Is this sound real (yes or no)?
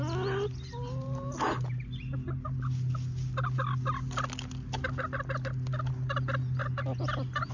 yes